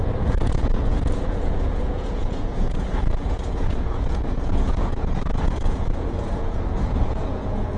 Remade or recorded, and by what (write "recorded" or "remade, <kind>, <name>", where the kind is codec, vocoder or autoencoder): remade, vocoder, Vocos